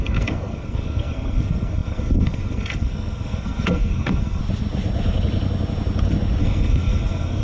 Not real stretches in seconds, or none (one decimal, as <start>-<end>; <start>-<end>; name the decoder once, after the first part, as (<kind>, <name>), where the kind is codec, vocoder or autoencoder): 0.0-4.4 (codec, SNAC); 6.4-7.4